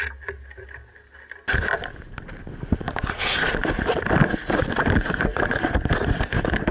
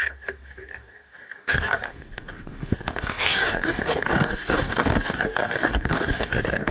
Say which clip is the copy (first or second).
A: second